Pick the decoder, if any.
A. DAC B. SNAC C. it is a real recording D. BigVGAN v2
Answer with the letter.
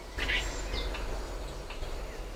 C